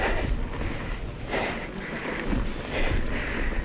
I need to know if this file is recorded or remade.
recorded